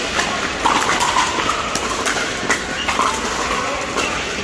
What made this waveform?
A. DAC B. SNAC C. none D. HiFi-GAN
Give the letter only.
C